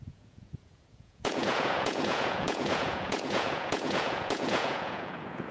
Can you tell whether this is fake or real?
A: fake